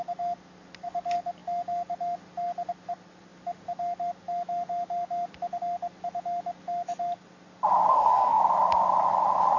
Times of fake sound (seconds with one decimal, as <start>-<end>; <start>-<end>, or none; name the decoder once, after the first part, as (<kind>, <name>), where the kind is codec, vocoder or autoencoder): 7.9-8.4 (codec, DAC)